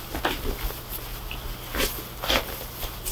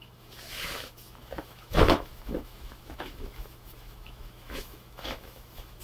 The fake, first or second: second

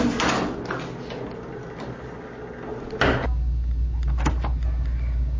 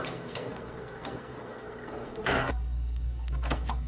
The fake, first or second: second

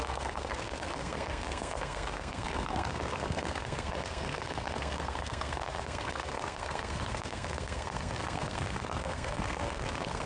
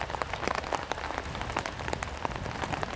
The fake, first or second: first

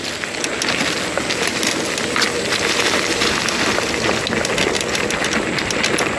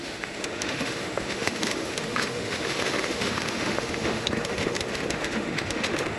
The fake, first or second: second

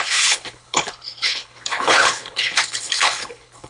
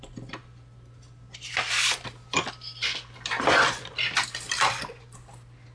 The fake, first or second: first